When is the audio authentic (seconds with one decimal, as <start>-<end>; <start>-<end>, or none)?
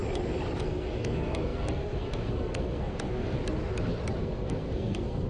0.0-0.6; 3.4-4.2